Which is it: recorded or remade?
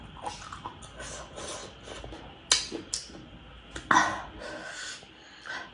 recorded